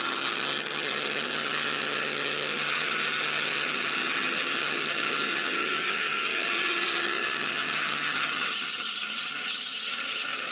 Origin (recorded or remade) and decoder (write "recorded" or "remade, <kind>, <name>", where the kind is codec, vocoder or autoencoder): remade, vocoder, HiFi-GAN